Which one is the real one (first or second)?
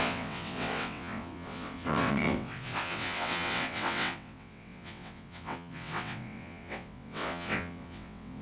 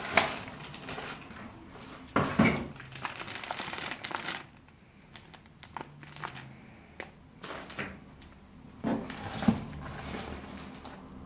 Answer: second